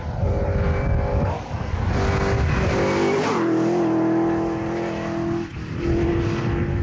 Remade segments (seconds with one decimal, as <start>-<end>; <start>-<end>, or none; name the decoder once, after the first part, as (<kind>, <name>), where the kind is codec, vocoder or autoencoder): 1.1-1.8 (codec, DAC)